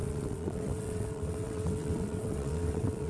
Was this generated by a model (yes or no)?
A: yes